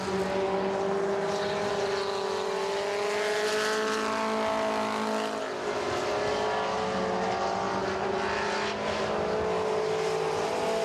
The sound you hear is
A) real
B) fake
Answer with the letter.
A